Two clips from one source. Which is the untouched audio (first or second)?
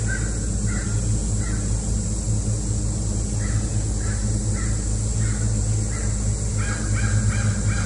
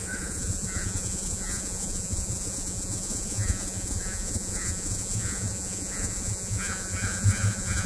first